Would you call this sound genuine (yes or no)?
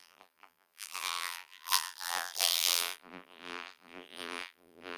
no